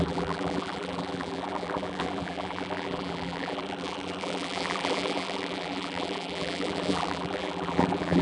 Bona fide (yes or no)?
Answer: no